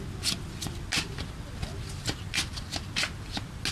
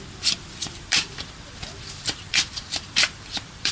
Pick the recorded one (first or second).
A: first